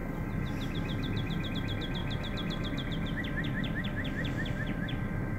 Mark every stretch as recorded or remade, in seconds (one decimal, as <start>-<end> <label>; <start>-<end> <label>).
0.0-2.0 recorded; 2.0-5.4 remade